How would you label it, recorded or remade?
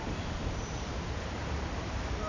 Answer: remade